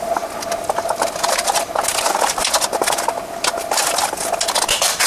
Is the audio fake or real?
real